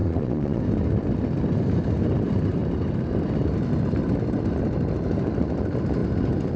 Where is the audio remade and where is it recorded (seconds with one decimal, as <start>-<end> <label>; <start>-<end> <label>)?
0.0-0.6 remade; 0.6-6.6 recorded